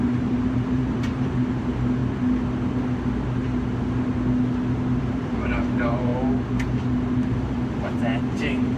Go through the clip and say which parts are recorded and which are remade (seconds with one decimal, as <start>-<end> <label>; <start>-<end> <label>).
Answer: 0.0-2.0 remade; 2.0-5.0 recorded; 5.0-6.1 remade; 6.1-7.3 recorded; 7.3-8.8 remade